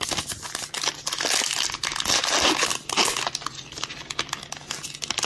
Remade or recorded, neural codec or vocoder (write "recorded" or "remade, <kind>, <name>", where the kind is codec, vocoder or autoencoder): recorded